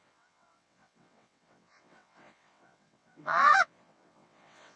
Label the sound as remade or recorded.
remade